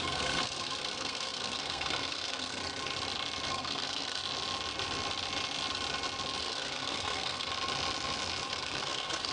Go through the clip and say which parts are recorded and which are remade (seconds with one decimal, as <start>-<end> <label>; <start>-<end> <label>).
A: 0.0-2.6 remade; 2.6-3.5 recorded; 3.5-4.2 remade; 4.2-6.4 recorded; 6.4-7.5 remade; 7.5-8.5 recorded; 8.5-9.3 remade